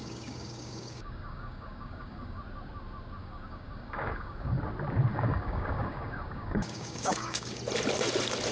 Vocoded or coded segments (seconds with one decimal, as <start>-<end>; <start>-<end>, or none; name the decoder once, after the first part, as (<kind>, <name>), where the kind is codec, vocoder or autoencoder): 0.0-2.4 (codec, DAC); 3.2-4.6; 5.1-7.6